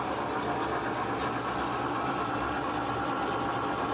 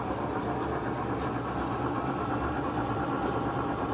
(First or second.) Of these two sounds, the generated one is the second